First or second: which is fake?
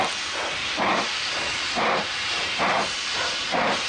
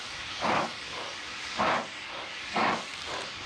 second